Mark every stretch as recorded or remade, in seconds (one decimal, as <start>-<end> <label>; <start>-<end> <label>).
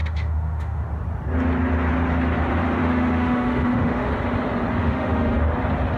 0.0-0.9 remade; 0.9-2.8 recorded; 2.8-4.1 remade; 4.1-4.8 recorded; 4.8-5.4 remade; 5.4-6.0 recorded